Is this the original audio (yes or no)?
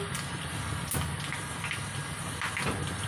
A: yes